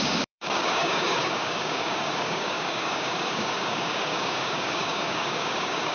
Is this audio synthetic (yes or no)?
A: yes